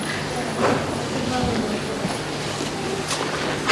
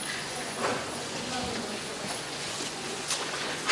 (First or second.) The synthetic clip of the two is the second